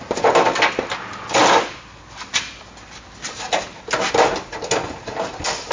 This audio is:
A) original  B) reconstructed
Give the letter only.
A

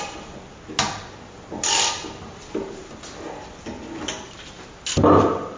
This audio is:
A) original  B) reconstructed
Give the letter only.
A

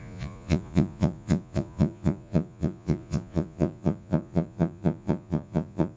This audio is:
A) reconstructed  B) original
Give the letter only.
A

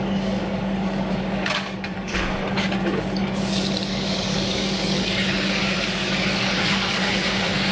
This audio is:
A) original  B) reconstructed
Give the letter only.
B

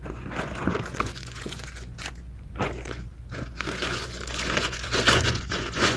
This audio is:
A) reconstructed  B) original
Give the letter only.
A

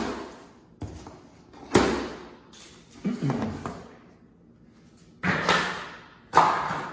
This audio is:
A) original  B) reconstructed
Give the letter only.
A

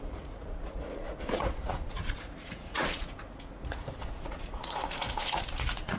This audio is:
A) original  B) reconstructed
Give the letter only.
B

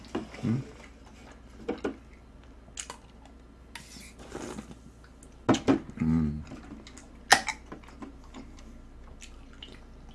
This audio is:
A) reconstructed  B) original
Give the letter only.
B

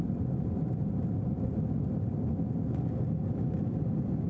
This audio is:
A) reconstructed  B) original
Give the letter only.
B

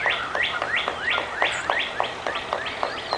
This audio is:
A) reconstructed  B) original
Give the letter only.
B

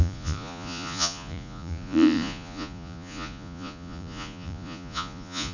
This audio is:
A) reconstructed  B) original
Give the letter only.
A